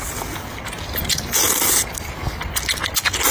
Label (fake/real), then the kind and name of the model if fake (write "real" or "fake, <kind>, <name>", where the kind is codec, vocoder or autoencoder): real